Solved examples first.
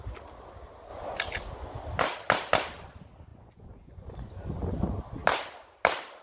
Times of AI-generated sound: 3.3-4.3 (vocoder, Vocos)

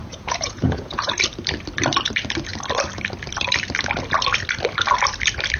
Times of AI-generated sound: 0.0-1.1 (vocoder, Vocos)

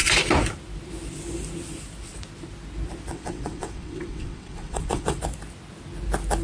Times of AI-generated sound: 3.1-5.2 (vocoder, WaveNeXt)

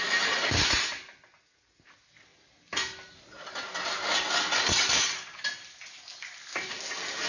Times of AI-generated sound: none

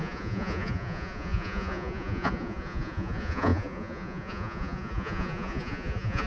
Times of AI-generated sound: 0.0-6.3 (vocoder, Vocos)

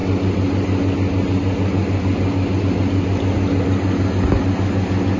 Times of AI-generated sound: none

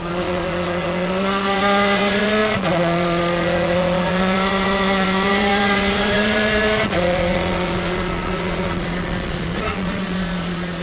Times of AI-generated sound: 0.0-10.8 (vocoder, Vocos)